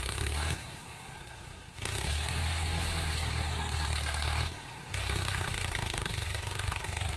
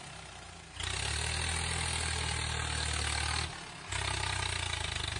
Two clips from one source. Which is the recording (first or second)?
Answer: second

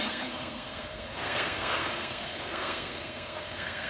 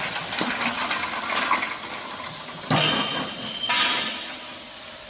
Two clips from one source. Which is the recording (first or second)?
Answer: second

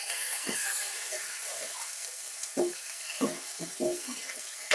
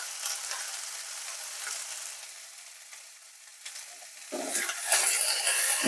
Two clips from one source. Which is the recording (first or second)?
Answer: second